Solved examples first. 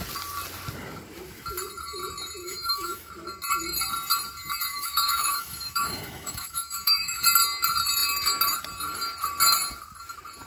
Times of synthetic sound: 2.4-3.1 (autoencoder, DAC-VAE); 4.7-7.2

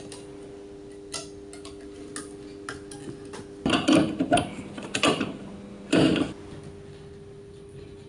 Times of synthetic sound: none

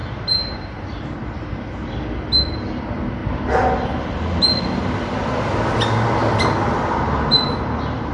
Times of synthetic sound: 5.2-5.8 (vocoder, BigVGAN v2)

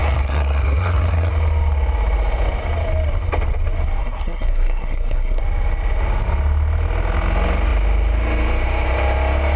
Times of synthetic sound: 0.0-1.3 (codec, SNAC); 4.0-5.4

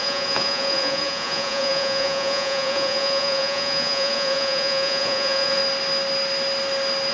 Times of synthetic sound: 0.0-5.6 (vocoder, Vocos)

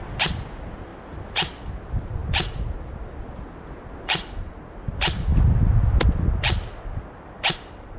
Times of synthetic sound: none

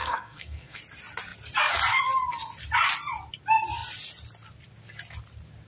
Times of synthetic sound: 0.0-0.8 (codec, SNAC)

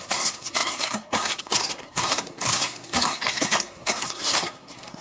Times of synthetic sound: 0.0-5.0 (codec, SNAC)